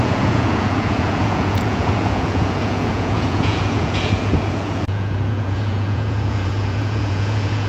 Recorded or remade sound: remade